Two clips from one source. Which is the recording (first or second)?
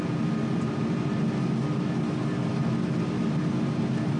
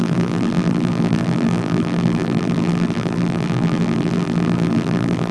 first